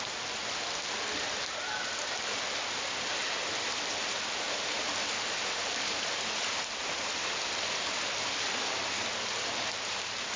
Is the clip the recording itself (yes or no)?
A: yes